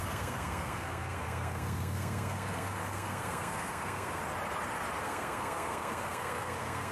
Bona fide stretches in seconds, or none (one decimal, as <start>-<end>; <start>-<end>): 4.2-5.0